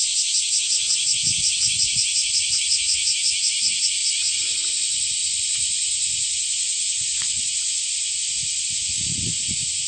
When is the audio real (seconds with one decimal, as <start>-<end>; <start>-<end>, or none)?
0.0-0.7; 1.6-4.0; 4.6-5.2; 7.8-9.9